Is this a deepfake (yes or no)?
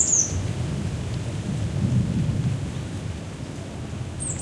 no